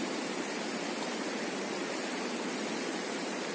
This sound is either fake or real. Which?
real